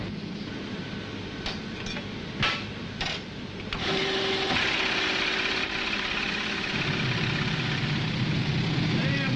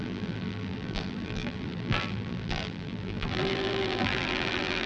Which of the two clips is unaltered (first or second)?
first